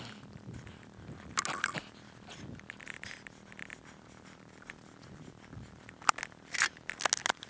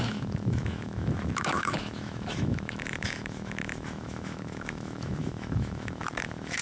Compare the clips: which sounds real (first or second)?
first